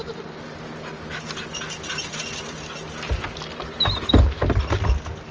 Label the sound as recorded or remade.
recorded